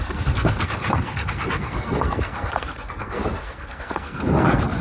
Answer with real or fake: fake